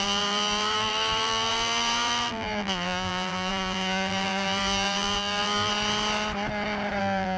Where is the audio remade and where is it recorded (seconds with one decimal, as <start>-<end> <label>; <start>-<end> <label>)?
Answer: 0.0-5.7 remade; 5.7-7.0 recorded; 7.0-7.4 remade